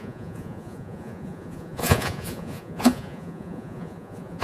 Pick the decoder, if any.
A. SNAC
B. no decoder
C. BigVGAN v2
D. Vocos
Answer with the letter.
D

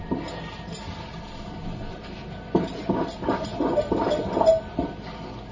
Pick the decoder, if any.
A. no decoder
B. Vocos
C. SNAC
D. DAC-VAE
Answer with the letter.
A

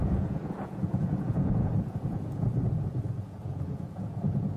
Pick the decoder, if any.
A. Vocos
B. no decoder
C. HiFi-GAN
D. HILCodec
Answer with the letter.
A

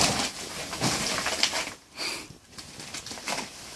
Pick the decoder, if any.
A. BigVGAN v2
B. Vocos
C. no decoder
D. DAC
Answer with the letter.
C